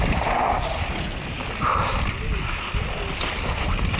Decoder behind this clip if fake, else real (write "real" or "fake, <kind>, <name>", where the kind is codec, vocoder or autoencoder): real